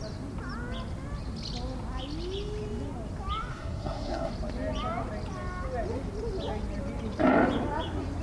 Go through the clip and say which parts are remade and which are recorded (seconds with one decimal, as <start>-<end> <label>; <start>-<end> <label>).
0.0-3.5 recorded; 3.5-4.3 remade; 4.3-8.2 recorded